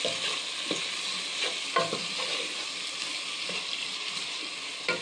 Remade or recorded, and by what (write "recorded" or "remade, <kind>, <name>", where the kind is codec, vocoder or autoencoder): recorded